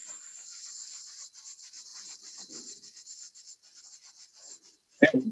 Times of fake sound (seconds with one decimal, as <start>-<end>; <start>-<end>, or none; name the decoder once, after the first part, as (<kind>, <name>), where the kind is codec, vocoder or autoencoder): 0.0-0.7 (vocoder, BigVGAN v2); 1.9-3.1